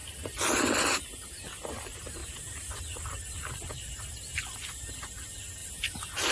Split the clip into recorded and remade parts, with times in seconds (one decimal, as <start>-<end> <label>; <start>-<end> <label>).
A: 0.0-0.8 remade; 0.8-2.2 recorded; 2.2-3.4 remade; 3.4-5.6 recorded; 5.6-6.3 remade

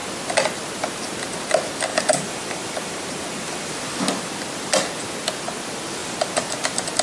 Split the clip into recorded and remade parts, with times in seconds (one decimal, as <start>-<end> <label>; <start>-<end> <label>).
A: 0.0-1.9 recorded; 1.9-3.7 remade; 3.7-6.0 recorded; 6.0-6.5 remade; 6.5-7.0 recorded

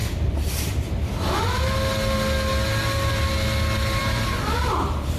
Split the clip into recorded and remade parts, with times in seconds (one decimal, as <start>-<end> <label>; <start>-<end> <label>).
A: 0.0-4.0 recorded; 4.0-5.2 remade

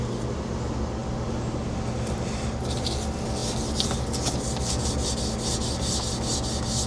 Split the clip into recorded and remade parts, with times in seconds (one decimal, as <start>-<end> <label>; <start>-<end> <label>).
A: 0.0-1.0 recorded; 1.0-2.9 remade; 2.9-6.9 recorded

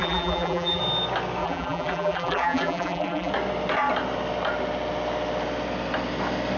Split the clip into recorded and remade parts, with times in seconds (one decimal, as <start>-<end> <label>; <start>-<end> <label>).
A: 0.0-0.8 remade; 0.8-1.4 recorded; 1.4-3.3 remade; 3.3-6.6 recorded

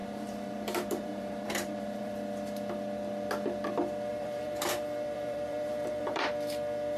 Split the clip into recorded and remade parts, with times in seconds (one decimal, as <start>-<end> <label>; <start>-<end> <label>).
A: 0.0-2.1 remade; 2.1-4.1 recorded; 4.1-6.3 remade; 6.3-7.0 recorded

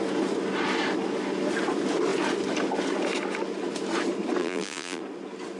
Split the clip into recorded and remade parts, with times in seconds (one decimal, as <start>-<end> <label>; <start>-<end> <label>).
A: 0.0-4.4 recorded; 4.4-5.0 remade; 5.0-5.6 recorded

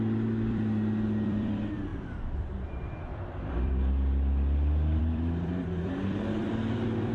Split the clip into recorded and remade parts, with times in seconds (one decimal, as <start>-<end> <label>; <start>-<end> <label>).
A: 0.0-7.1 remade